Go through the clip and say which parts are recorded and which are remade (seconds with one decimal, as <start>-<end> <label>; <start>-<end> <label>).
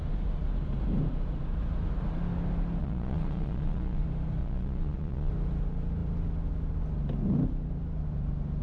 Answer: 0.0-2.8 recorded; 2.8-4.0 remade; 4.0-4.4 recorded; 4.4-5.3 remade; 5.3-8.6 recorded